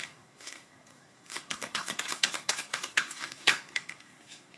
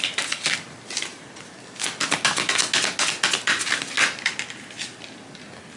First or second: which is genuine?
second